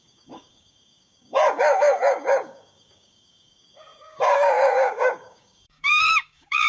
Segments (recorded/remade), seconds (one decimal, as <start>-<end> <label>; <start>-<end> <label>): 0.0-6.7 remade